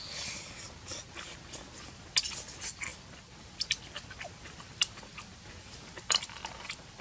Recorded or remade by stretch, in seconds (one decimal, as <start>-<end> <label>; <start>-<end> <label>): 0.0-7.0 recorded